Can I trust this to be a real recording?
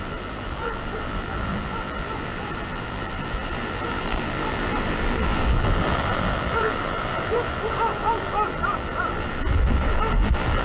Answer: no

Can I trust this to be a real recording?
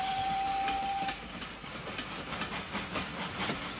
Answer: yes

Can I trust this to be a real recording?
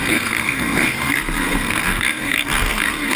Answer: no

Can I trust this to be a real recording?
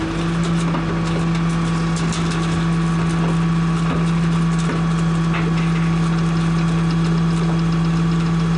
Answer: yes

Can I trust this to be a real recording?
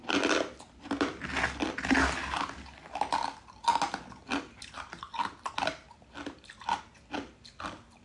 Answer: yes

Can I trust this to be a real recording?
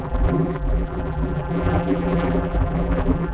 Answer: no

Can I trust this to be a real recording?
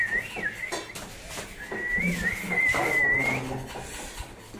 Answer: yes